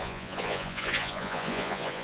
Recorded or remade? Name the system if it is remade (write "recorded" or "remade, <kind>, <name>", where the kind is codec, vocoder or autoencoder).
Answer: remade, vocoder, Vocos